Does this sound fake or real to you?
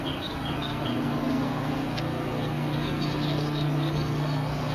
fake